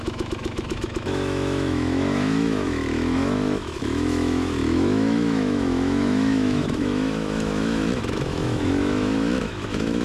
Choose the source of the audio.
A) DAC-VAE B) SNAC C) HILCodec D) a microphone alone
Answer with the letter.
A